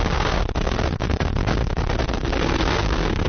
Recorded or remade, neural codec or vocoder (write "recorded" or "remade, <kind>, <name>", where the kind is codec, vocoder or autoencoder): remade, codec, SNAC